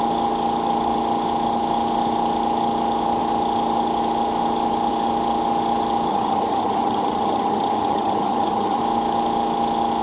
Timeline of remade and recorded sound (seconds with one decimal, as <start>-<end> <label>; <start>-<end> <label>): 0.0-6.1 recorded; 6.1-8.8 remade; 8.8-10.0 recorded